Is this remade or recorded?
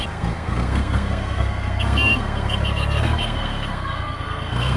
remade